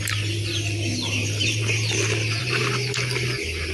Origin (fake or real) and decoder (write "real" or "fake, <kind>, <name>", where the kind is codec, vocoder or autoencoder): real